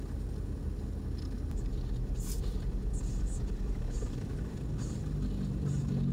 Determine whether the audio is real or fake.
real